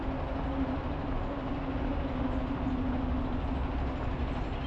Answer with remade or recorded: recorded